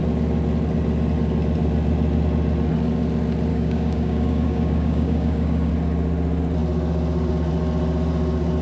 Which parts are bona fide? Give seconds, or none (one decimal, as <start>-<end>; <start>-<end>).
0.0-3.5; 5.7-8.6